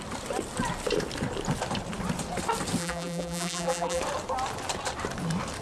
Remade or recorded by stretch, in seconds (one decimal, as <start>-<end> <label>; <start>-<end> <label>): 0.0-2.8 recorded; 2.8-4.0 remade; 4.0-5.6 recorded